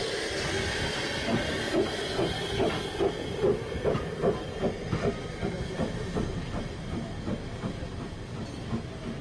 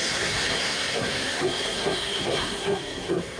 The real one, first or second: first